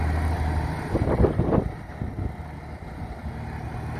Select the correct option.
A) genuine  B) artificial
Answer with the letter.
A